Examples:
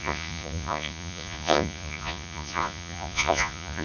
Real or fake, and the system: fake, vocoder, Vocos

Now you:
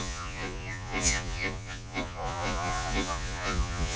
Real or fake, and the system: fake, vocoder, Vocos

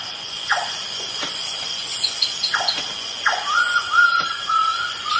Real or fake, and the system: fake, vocoder, Vocos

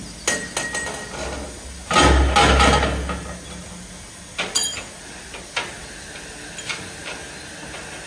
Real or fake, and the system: real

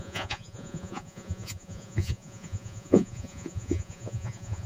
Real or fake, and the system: fake, vocoder, Vocos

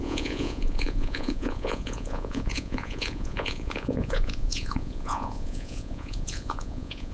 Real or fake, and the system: fake, vocoder, Vocos